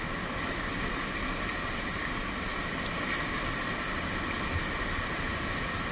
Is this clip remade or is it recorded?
recorded